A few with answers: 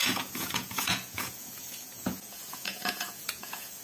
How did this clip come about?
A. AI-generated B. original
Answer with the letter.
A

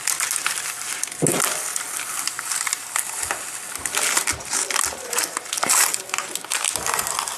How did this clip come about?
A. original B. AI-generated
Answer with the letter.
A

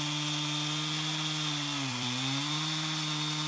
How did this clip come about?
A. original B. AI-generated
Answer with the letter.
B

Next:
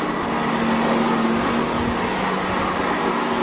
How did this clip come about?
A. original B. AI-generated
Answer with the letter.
A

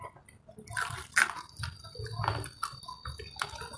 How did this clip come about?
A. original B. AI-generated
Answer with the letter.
A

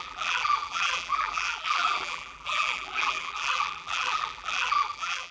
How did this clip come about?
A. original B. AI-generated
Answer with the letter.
B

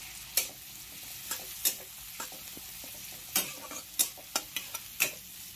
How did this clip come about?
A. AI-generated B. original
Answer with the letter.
B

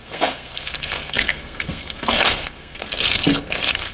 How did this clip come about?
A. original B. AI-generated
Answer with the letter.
B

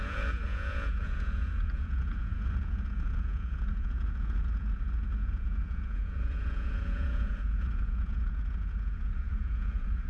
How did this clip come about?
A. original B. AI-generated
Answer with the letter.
B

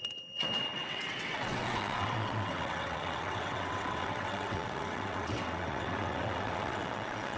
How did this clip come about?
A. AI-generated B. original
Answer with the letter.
A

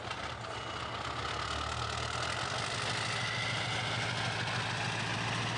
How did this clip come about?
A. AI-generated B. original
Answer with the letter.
B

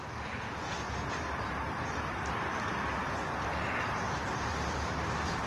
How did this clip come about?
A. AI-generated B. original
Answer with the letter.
B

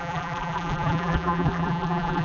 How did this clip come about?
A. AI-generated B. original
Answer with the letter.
A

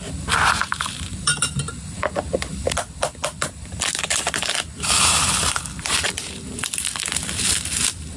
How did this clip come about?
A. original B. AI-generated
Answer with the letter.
B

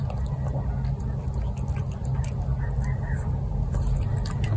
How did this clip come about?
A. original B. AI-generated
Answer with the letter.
A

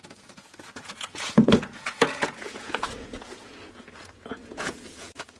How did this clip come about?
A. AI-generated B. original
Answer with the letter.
A